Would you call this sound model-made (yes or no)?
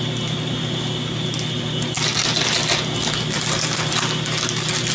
no